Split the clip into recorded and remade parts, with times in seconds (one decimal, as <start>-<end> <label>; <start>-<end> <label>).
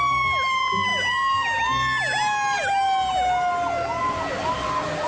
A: 0.0-5.1 recorded